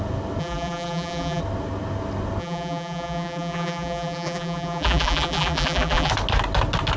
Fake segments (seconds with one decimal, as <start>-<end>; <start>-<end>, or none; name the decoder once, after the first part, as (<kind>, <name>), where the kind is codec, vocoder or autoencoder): 0.4-1.4 (vocoder, BigVGAN v2); 2.4-6.1